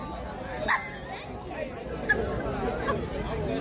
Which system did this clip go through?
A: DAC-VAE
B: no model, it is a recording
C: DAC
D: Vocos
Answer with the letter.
B